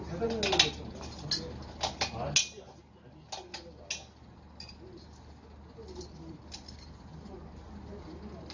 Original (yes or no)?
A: yes